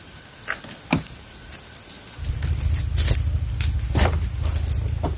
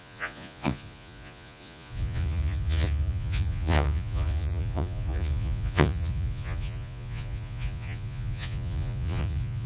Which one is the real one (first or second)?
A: first